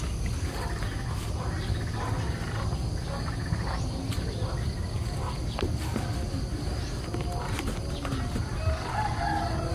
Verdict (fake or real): real